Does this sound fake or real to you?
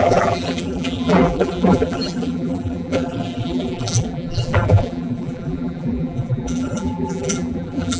fake